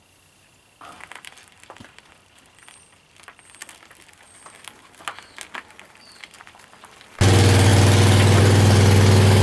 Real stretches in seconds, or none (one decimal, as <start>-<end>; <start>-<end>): 0.0-9.4